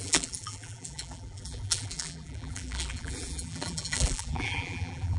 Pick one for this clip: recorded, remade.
remade